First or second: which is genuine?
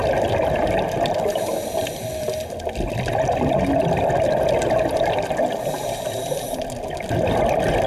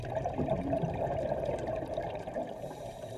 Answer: first